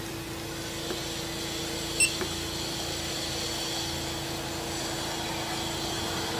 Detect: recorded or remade recorded